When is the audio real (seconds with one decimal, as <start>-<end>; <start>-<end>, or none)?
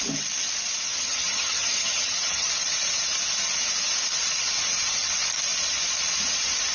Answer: 0.0-0.9; 2.5-6.7